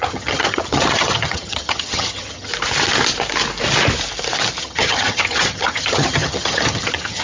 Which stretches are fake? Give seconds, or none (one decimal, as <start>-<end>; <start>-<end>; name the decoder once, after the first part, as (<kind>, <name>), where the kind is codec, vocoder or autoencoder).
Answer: 0.0-2.5 (vocoder, HiFi-GAN); 4.6-7.2